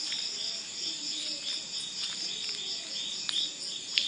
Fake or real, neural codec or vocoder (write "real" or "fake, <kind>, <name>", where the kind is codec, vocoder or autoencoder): real